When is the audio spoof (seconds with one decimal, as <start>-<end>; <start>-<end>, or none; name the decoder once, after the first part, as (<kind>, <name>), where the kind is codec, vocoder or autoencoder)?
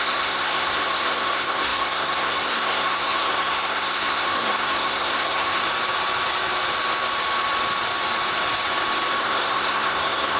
0.0-5.6 (codec, SNAC); 9.2-10.4